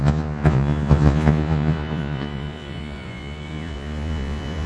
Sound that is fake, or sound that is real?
fake